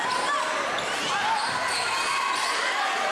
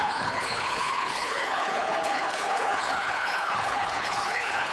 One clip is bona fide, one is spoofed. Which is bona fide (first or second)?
first